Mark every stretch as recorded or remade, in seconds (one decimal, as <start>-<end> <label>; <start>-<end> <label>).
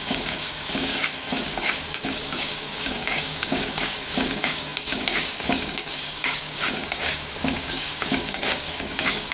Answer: 0.0-9.3 remade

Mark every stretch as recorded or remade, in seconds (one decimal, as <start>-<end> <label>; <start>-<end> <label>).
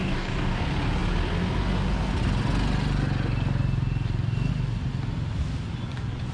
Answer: 0.0-0.6 remade; 0.6-6.3 recorded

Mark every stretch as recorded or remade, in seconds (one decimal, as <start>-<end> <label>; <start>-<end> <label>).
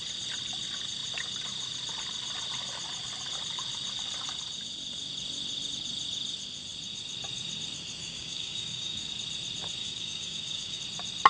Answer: 0.0-8.0 recorded; 8.0-9.1 remade; 9.1-9.8 recorded; 9.8-10.8 remade; 10.8-11.3 recorded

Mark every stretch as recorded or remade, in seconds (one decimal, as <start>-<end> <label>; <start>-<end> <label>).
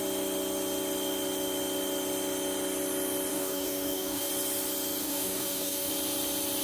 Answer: 0.0-3.3 recorded; 3.3-4.3 remade; 4.3-5.0 recorded; 5.0-5.9 remade; 5.9-6.6 recorded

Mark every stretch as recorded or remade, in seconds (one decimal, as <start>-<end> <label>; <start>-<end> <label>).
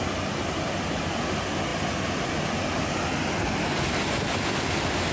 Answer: 0.0-5.1 recorded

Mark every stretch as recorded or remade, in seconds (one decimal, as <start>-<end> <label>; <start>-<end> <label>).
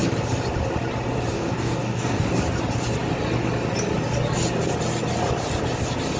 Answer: 0.0-1.3 recorded; 1.3-2.3 remade; 2.3-6.2 recorded